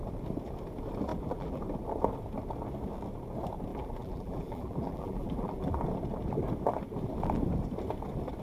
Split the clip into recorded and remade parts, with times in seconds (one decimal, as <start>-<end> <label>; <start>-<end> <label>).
0.0-1.1 recorded; 1.1-1.6 remade; 1.6-3.7 recorded; 3.7-5.8 remade; 5.8-8.4 recorded